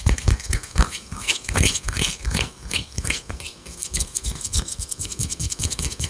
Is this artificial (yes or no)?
yes